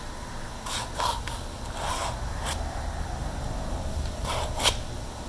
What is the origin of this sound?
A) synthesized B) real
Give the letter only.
B